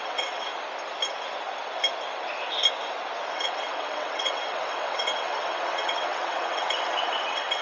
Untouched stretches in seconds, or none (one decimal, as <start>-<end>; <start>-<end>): 0.5-3.3